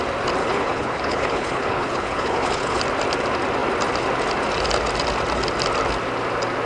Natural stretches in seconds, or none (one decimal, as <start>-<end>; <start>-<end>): 0.0-0.4; 2.8-6.7